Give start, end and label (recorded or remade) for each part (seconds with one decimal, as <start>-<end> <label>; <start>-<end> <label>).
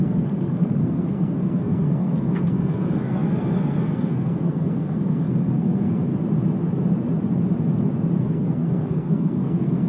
0.0-6.1 remade; 6.1-8.2 recorded; 8.2-9.9 remade